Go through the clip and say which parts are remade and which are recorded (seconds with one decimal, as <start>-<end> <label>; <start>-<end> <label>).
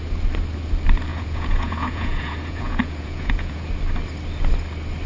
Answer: 0.0-1.1 recorded; 1.1-3.7 remade; 3.7-5.1 recorded